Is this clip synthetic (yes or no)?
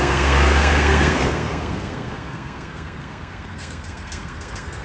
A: yes